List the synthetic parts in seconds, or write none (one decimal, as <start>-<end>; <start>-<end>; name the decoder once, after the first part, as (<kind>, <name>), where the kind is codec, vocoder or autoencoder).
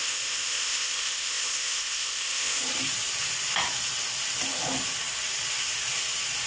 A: 0.0-2.6 (codec, ZipCodec)